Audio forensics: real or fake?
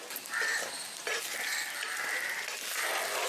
real